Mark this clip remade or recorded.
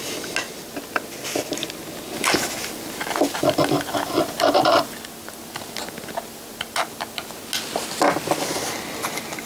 recorded